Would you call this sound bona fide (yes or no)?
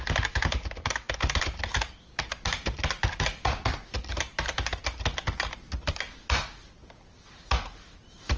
yes